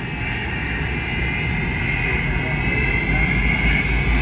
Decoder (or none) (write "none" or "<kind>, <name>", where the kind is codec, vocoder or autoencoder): none